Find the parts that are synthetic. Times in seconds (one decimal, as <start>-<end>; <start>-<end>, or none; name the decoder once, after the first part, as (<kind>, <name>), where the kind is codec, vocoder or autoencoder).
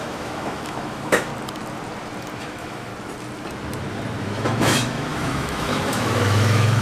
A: 0.0-1.3 (autoencoder, DAC-VAE); 2.4-2.9; 4.2-6.8